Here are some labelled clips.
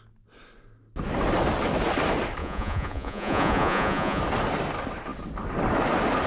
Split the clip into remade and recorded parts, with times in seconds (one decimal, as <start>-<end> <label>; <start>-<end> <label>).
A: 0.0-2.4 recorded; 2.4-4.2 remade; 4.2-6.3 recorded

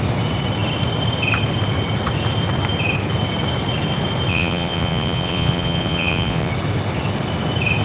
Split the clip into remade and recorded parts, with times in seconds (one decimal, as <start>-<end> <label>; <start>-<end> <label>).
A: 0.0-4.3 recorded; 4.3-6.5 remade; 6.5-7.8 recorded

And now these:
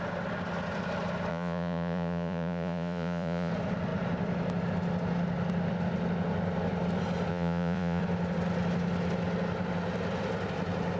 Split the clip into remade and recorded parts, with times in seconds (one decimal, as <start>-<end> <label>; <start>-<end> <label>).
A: 0.0-1.3 recorded; 1.3-3.5 remade; 3.5-7.3 recorded; 7.3-8.0 remade; 8.0-11.0 recorded

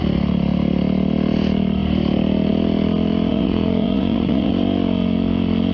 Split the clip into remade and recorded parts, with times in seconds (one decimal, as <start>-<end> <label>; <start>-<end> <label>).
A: 0.0-3.3 recorded; 3.3-4.5 remade; 4.5-5.7 recorded

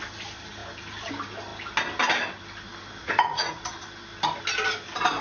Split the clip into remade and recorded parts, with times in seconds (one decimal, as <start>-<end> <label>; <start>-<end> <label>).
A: 0.0-3.0 recorded; 3.0-3.6 remade; 3.6-5.2 recorded